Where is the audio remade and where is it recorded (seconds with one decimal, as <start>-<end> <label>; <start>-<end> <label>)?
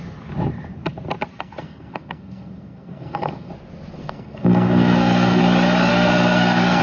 0.0-1.3 recorded; 1.3-3.5 remade; 3.5-4.0 recorded; 4.0-5.4 remade; 5.4-5.9 recorded; 5.9-6.8 remade